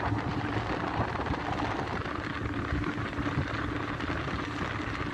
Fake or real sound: real